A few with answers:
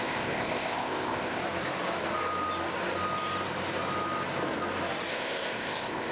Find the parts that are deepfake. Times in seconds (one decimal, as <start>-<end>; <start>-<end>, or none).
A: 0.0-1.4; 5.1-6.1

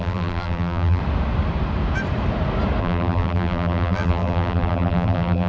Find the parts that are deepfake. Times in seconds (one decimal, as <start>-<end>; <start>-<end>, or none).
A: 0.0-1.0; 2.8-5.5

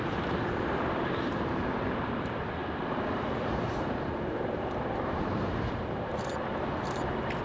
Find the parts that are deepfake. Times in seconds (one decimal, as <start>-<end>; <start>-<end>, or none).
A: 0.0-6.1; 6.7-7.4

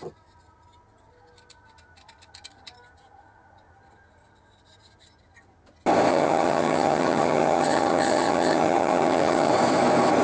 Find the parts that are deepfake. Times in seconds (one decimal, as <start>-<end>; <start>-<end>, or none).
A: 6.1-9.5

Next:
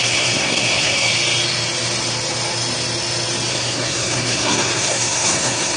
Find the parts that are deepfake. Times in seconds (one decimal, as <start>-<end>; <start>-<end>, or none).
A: 0.0-1.1; 3.5-5.8

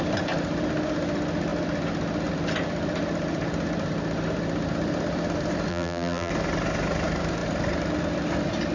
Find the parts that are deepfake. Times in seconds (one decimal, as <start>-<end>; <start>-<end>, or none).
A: 5.7-6.3

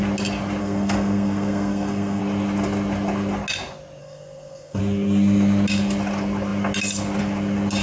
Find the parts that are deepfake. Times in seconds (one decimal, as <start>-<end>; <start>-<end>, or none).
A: 0.6-2.2; 4.0-4.8

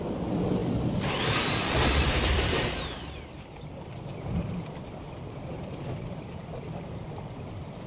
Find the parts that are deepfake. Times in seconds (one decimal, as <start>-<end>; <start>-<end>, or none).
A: none